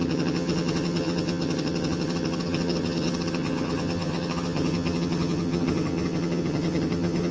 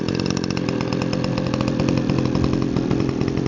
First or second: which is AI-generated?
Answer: first